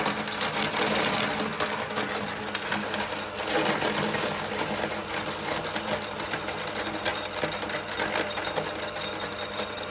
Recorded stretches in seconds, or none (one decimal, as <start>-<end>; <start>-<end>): 0.0-5.0; 6.6-9.9

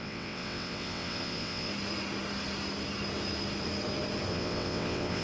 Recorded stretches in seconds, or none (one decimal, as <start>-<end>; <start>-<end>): 1.7-4.3

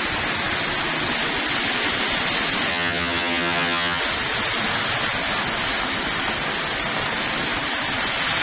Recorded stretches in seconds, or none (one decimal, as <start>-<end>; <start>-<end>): 0.0-2.7; 4.0-8.4

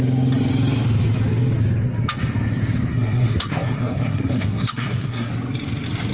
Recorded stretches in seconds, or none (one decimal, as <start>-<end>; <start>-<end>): 0.0-2.9; 5.3-6.1